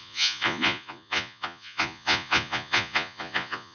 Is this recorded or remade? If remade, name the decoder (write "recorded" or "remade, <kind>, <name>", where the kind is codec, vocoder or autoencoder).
remade, vocoder, Vocos